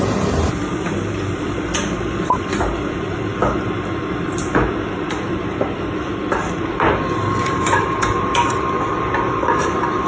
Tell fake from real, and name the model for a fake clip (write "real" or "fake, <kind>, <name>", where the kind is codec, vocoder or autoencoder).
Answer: fake, vocoder, BigVGAN v2